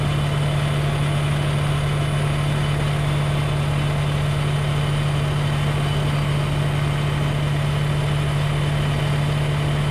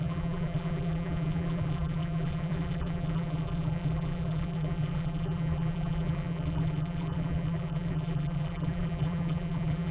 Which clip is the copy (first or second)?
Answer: second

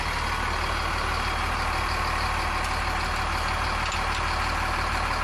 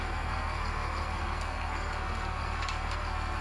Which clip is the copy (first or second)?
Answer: second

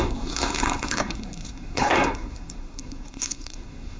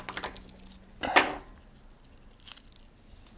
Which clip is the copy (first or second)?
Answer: first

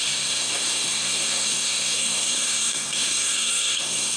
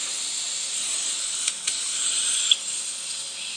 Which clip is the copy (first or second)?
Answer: first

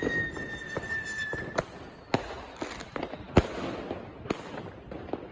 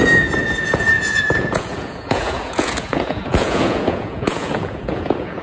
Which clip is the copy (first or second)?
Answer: second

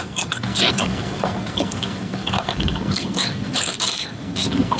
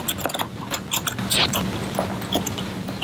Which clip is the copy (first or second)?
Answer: first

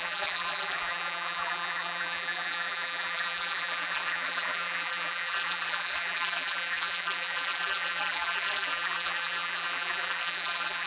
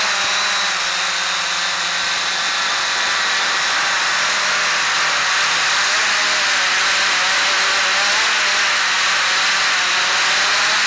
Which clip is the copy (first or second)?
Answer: first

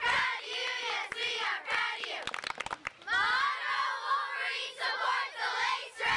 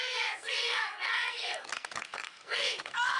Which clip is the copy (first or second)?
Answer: second